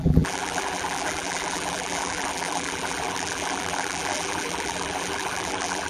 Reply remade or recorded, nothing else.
remade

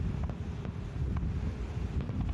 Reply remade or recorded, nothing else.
recorded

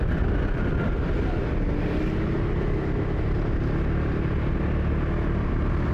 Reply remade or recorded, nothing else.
recorded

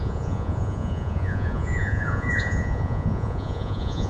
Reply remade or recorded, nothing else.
remade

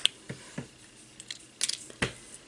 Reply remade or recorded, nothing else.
recorded